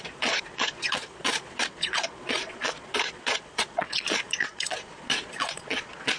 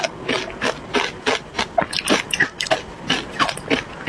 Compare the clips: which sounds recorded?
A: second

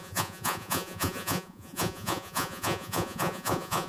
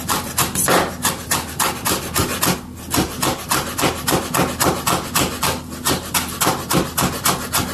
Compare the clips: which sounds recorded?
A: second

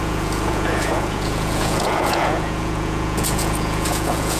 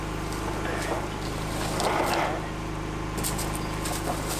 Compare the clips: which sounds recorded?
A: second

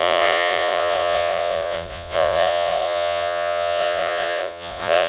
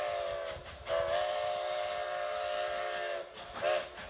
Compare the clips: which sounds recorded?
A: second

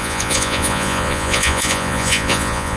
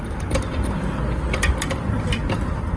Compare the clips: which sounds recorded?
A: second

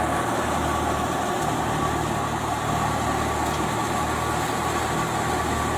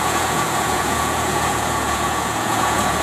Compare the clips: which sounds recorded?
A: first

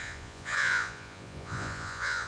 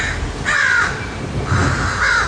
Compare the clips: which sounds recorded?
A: second